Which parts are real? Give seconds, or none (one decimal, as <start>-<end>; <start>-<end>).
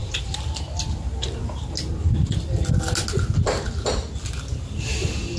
0.0-5.4